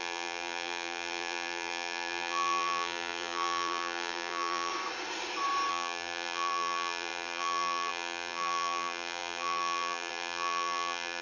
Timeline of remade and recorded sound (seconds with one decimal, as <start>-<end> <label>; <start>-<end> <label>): 0.0-4.7 remade; 4.7-5.7 recorded; 5.7-11.2 remade

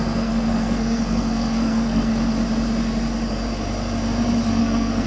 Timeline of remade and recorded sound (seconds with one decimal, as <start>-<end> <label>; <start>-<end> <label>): 0.0-2.1 remade; 2.1-4.6 recorded; 4.6-5.1 remade

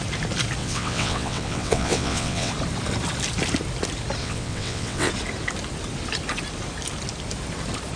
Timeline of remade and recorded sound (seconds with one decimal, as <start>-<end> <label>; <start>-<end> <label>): 0.0-0.6 recorded; 0.6-2.5 remade; 2.5-4.2 recorded; 4.2-5.1 remade; 5.1-8.0 recorded

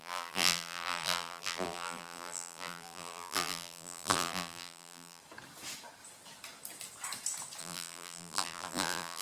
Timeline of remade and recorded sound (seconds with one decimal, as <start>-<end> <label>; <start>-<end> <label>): 0.0-5.2 remade; 5.2-7.6 recorded; 7.6-9.2 remade

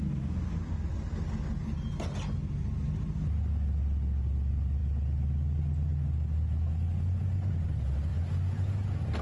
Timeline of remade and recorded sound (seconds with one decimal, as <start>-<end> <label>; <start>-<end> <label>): 0.0-9.2 recorded